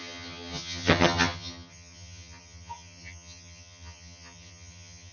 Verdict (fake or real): fake